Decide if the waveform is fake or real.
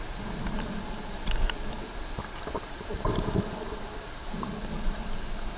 real